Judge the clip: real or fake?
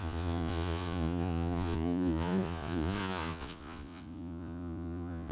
fake